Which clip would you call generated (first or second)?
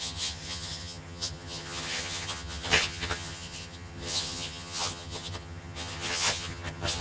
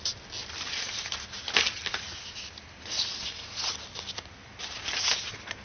first